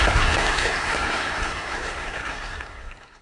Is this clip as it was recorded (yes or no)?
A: no